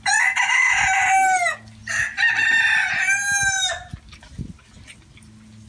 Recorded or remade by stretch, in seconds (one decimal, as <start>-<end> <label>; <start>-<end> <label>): 0.0-5.7 recorded